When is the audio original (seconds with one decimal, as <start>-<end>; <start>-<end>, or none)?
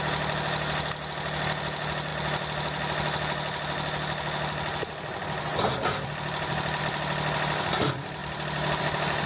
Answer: 0.0-9.3